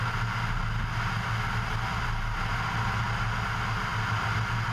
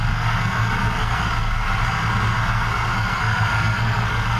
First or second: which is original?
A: first